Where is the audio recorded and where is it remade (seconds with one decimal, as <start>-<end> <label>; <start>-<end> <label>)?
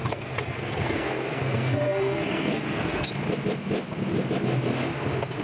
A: 0.0-3.1 remade; 3.1-5.4 recorded